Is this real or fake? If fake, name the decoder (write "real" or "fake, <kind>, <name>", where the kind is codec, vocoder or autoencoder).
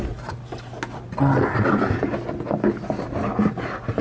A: real